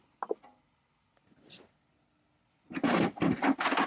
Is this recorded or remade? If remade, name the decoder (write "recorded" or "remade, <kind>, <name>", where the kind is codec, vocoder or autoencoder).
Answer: recorded